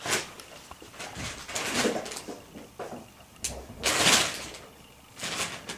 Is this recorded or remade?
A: recorded